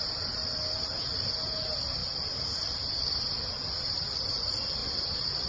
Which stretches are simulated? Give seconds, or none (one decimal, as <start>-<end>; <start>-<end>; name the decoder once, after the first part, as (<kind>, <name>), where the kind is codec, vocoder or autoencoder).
none